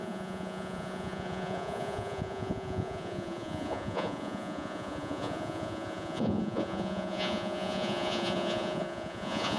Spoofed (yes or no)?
yes